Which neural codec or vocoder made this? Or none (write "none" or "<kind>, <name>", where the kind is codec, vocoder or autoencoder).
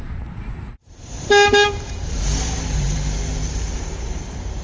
vocoder, BigVGAN v2